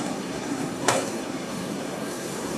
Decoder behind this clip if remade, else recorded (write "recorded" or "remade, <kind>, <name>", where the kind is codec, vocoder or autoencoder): remade, codec, SNAC